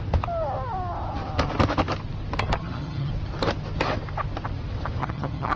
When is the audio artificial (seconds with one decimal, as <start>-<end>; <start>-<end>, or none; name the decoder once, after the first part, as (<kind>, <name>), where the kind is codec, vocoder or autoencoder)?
2.6-3.1 (vocoder, HiFi-GAN); 5.0-5.6